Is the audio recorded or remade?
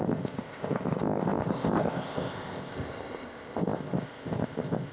remade